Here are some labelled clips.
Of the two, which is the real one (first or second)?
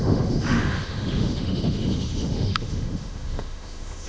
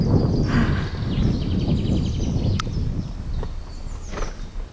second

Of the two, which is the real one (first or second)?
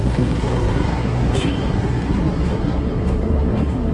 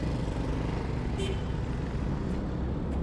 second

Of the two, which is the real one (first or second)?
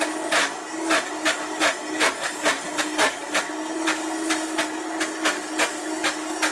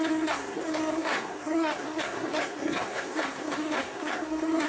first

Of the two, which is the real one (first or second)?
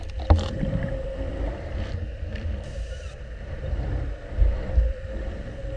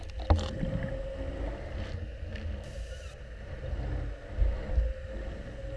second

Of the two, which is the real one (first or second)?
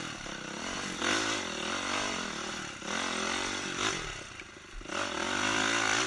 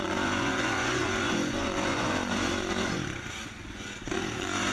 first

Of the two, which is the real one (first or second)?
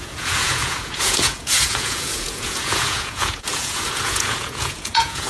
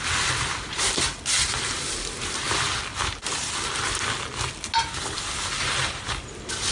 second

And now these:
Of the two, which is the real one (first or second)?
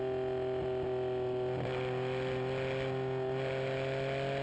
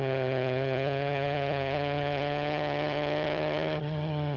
first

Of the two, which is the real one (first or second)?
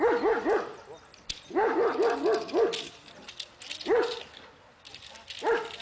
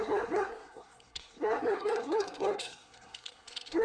first